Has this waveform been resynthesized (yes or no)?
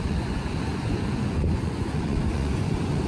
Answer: yes